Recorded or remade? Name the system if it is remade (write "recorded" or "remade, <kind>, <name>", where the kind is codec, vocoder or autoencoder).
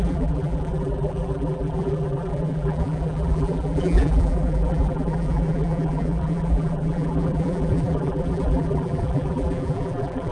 remade, vocoder, BigVGAN v2